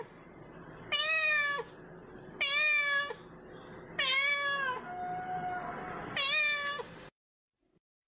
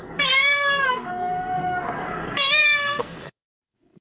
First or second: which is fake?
second